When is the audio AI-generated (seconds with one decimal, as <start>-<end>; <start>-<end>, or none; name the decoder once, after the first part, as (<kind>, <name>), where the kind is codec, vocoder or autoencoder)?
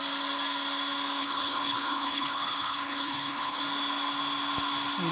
1.2-3.6 (codec, HILCodec)